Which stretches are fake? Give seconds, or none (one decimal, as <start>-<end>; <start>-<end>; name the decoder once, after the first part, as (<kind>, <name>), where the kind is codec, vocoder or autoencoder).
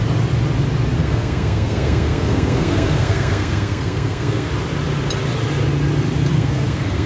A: 1.0-4.5 (codec, SNAC); 6.3-7.1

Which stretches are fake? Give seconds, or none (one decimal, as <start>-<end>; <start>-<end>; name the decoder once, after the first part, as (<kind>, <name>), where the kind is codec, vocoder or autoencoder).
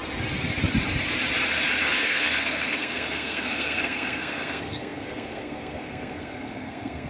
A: 1.8-7.1 (codec, SNAC)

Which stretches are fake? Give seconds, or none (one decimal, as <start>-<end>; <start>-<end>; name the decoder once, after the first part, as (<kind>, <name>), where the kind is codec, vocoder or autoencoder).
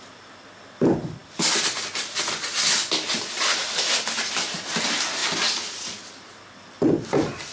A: none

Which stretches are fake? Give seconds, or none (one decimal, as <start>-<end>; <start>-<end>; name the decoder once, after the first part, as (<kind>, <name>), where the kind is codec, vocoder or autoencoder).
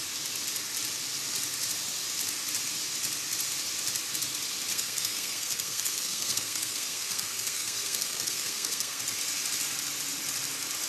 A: 4.7-9.0 (codec, SNAC)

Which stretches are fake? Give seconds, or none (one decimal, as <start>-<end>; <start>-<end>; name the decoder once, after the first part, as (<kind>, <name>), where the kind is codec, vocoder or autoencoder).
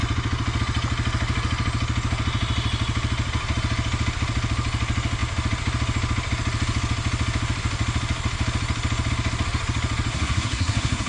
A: 10.1-11.1 (codec, SNAC)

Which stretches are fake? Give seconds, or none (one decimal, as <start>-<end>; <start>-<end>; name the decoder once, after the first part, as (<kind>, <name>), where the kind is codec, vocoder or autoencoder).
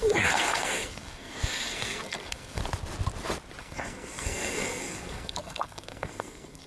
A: 0.0-2.6 (codec, SNAC); 3.6-6.7